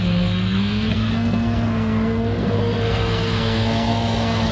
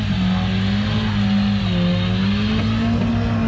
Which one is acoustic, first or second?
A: second